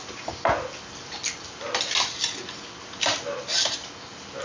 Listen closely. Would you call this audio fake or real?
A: real